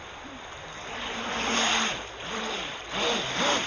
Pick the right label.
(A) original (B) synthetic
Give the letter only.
A